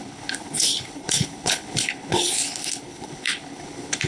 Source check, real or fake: fake